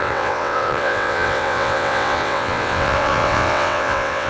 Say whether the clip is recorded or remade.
remade